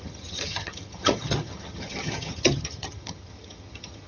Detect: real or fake fake